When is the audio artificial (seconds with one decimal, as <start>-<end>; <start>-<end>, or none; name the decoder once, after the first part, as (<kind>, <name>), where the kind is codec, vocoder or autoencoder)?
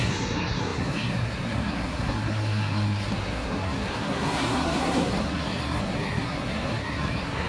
0.0-7.5 (codec, SNAC)